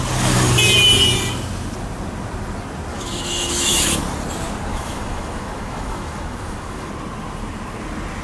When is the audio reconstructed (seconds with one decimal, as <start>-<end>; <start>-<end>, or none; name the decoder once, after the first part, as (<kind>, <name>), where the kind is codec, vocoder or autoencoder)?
2.9-4.0 (autoencoder, DAC-VAE); 4.7-6.9